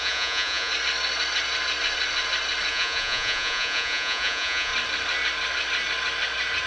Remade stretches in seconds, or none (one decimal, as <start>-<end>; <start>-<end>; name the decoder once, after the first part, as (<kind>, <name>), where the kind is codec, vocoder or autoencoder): 0.0-0.7 (vocoder, Vocos); 2.7-4.7